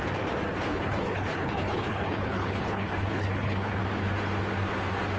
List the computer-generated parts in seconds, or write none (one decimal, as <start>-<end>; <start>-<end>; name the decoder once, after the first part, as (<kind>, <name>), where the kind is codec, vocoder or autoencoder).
0.7-3.8 (codec, HILCodec)